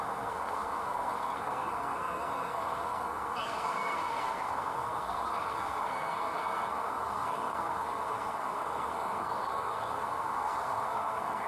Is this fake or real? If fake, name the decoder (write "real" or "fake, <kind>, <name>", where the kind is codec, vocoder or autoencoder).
fake, codec, SNAC